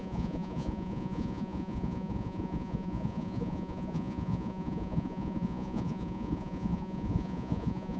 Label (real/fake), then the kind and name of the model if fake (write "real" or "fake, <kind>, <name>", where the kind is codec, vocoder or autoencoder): fake, vocoder, Vocos